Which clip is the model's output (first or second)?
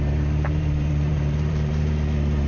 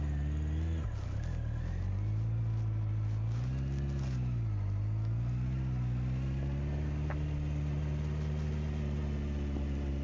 first